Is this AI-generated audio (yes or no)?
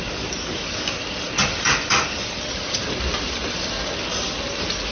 no